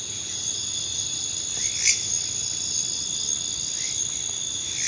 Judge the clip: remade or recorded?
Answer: recorded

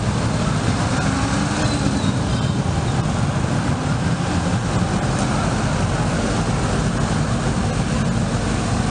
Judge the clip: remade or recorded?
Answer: recorded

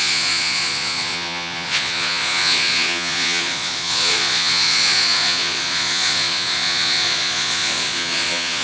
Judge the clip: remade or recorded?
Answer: remade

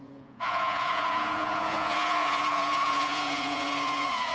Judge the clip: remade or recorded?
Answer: remade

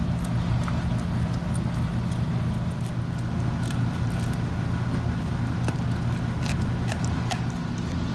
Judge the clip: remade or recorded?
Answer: recorded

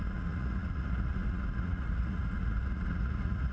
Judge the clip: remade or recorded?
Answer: remade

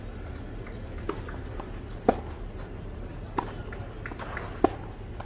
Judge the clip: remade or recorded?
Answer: recorded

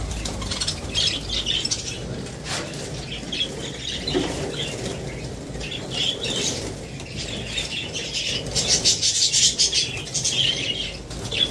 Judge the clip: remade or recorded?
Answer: recorded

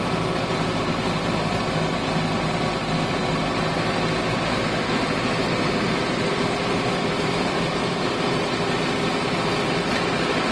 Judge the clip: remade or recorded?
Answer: recorded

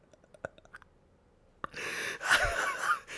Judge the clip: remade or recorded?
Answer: recorded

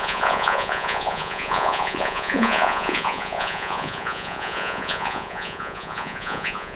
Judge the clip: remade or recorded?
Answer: remade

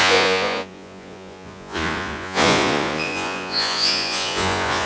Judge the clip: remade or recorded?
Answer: remade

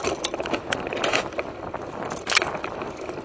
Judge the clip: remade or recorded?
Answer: recorded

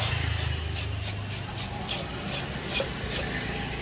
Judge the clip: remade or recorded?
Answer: recorded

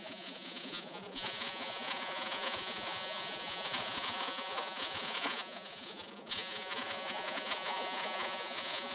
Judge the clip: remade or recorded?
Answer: remade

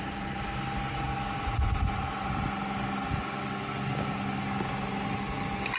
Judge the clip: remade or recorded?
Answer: recorded